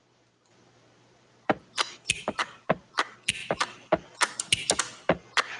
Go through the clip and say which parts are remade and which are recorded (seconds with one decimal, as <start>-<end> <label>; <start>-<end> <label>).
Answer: 0.0-2.9 remade; 2.9-5.6 recorded